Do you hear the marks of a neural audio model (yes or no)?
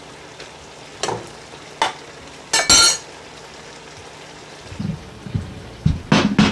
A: no